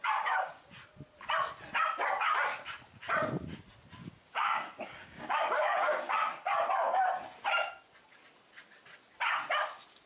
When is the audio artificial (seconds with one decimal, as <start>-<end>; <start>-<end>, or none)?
0.0-0.5; 4.0-6.1